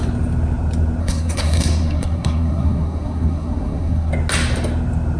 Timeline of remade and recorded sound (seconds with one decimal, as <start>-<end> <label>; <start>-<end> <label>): 0.0-1.0 recorded; 1.0-4.1 remade; 4.1-5.2 recorded